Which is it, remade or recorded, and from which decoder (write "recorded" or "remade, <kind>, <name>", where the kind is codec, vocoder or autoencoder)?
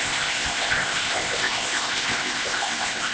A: remade, codec, ZipCodec